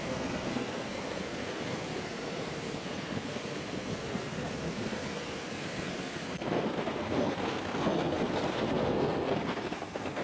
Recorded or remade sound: remade